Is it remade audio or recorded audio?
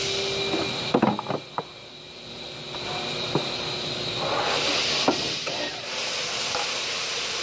recorded